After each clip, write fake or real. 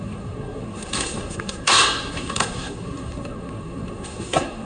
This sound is fake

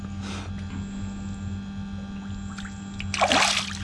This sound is real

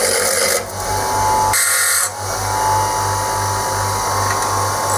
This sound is real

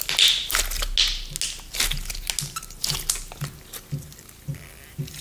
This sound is real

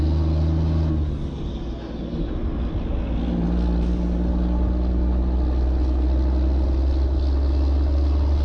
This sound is real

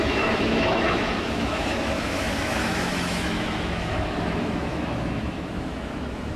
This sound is fake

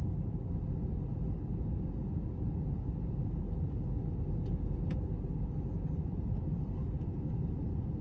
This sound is real